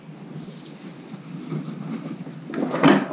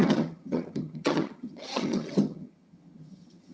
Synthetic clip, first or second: second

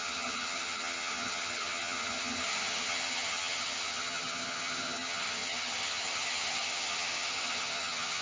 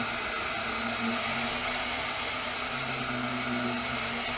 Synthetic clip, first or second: first